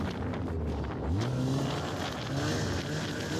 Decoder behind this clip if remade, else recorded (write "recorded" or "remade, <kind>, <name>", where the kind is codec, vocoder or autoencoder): recorded